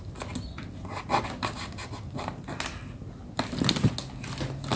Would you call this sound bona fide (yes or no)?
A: yes